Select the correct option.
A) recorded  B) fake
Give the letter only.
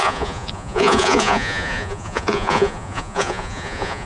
B